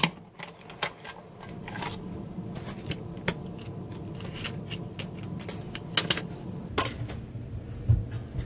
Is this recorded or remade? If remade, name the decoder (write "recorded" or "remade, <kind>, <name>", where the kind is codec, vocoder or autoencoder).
recorded